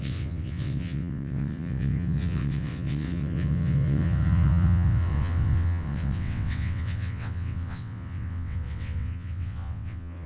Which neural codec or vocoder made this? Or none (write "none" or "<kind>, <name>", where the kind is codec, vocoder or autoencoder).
vocoder, WaveNeXt